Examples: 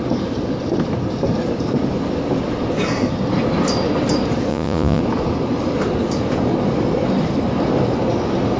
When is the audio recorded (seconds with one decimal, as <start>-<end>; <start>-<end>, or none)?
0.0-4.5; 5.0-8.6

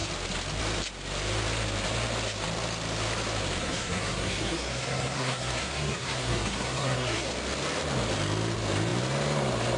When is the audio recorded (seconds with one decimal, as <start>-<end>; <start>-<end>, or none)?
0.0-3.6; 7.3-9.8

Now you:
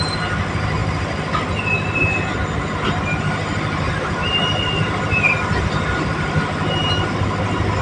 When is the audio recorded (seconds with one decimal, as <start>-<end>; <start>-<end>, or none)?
0.0-7.8